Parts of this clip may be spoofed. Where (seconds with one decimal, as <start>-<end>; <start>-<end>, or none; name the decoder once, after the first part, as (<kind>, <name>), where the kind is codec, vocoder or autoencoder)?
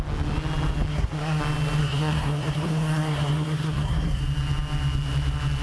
0.9-1.4 (codec, SNAC); 1.8-4.2